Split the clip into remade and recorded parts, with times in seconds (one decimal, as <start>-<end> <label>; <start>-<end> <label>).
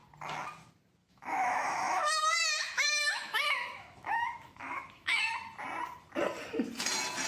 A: 0.0-1.0 recorded; 1.0-5.2 remade; 5.2-7.3 recorded